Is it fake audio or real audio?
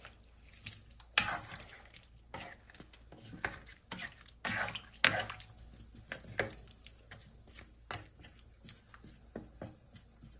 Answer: real